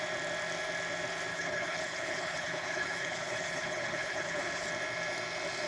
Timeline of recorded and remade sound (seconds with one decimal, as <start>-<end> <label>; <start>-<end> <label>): 0.0-1.3 recorded; 1.3-4.7 remade; 4.7-5.7 recorded